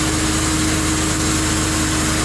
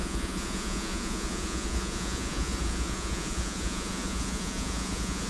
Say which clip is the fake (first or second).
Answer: second